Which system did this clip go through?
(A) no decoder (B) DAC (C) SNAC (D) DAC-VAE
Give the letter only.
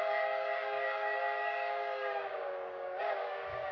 B